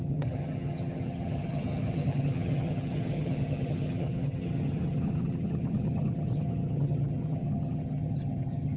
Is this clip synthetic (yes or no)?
yes